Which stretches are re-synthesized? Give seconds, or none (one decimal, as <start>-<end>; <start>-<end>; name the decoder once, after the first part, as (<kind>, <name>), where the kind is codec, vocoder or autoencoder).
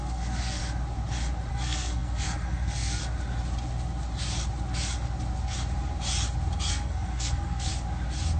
0.0-0.6 (codec, SNAC); 1.5-3.0; 6.7-7.7